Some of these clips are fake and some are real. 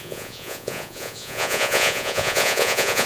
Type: fake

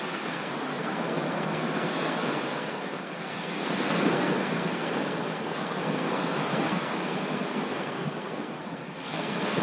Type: fake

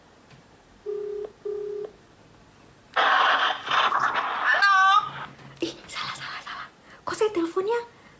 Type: real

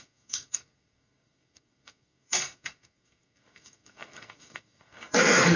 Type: fake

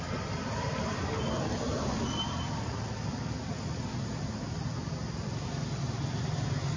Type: real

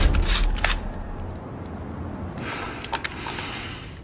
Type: real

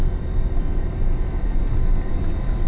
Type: real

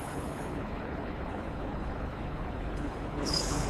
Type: fake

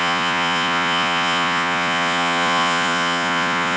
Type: fake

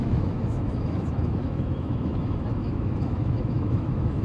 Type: fake